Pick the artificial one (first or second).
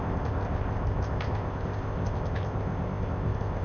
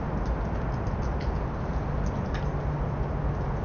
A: first